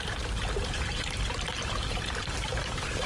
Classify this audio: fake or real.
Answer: fake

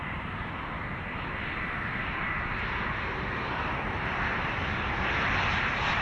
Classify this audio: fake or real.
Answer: real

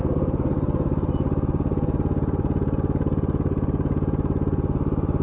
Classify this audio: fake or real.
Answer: real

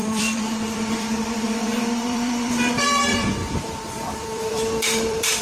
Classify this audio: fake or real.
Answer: fake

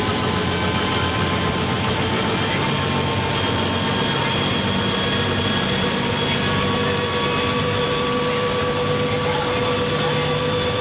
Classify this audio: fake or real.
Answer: real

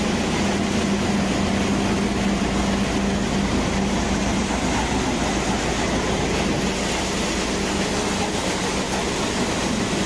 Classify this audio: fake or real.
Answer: real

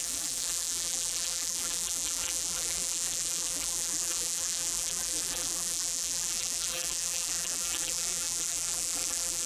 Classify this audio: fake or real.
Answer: fake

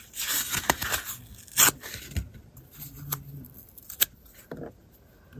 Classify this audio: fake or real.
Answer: real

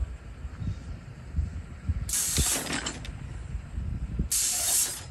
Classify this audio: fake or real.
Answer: real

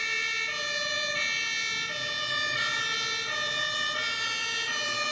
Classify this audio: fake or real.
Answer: real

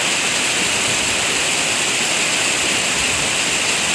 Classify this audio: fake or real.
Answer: real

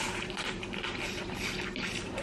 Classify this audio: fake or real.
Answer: real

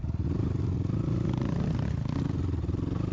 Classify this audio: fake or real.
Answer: real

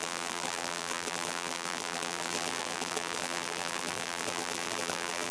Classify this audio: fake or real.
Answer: fake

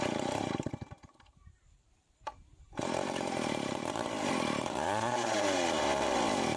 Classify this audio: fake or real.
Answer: fake